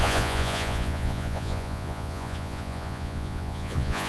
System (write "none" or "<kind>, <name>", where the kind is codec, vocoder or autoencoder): vocoder, Vocos